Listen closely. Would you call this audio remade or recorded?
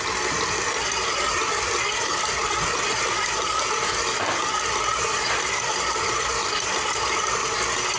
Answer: remade